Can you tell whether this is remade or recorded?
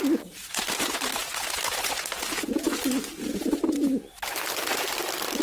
recorded